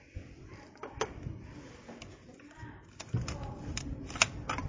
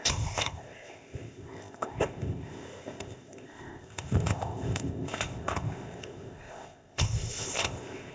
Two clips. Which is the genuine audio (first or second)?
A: first